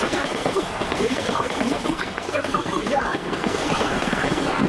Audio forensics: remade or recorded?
remade